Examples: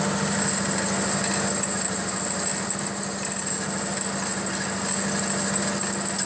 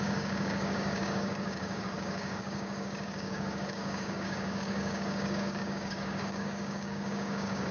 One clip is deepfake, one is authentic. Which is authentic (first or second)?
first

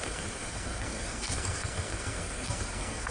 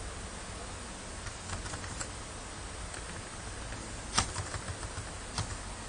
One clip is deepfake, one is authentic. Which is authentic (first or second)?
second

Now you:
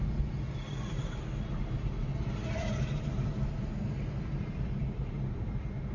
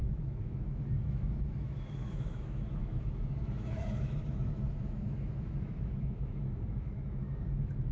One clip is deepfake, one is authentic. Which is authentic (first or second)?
first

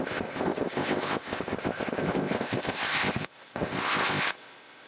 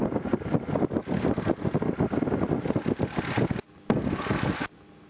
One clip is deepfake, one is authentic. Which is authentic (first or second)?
second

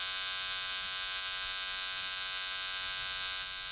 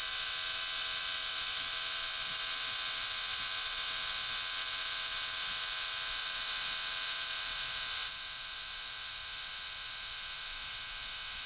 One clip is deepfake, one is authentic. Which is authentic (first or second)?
first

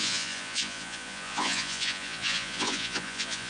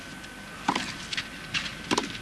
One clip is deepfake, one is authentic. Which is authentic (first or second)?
second